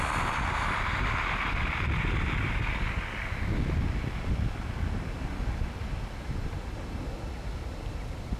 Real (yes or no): yes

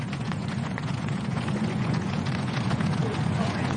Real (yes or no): no